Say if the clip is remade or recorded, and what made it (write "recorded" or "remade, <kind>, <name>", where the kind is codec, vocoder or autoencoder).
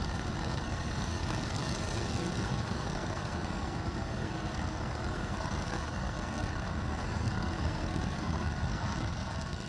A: remade, codec, SNAC